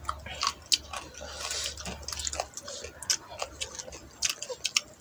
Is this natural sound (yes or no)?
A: yes